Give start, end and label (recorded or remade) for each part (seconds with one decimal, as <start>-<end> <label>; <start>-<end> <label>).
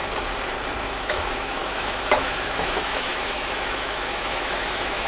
0.0-0.8 recorded; 0.8-5.1 remade